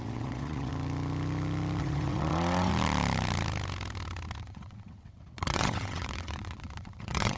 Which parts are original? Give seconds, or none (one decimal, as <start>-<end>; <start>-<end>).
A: 0.7-1.8; 2.7-4.4